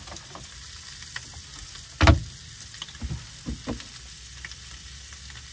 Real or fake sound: real